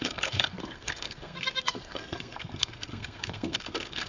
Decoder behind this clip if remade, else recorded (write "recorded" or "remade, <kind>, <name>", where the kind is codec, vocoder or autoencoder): remade, codec, SNAC